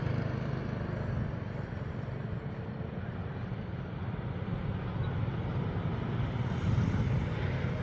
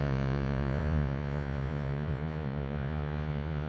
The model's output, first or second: second